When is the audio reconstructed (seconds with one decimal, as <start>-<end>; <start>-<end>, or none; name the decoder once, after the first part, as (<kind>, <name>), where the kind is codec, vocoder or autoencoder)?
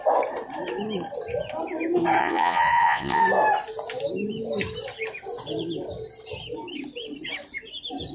2.2-3.2 (vocoder, Vocos)